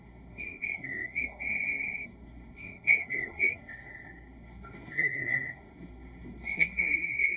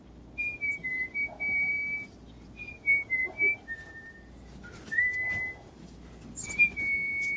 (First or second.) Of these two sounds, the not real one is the first